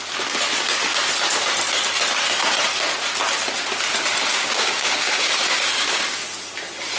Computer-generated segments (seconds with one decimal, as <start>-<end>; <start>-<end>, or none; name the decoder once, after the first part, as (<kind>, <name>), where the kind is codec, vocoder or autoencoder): 4.3-6.2 (codec, DAC)